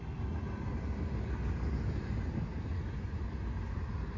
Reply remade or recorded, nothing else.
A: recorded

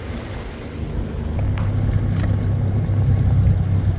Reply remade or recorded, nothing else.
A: recorded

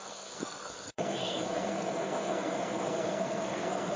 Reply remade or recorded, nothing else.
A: remade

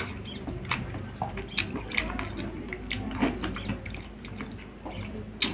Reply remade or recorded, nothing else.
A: recorded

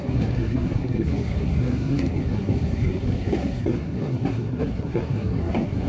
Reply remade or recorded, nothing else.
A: remade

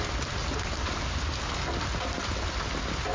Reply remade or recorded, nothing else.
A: recorded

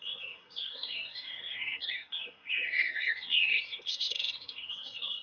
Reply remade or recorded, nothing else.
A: remade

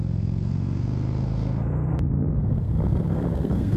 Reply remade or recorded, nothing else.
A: remade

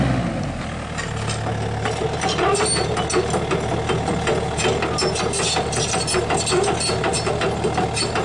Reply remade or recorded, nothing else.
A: recorded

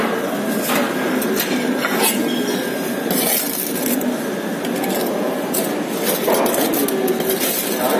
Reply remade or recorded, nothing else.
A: recorded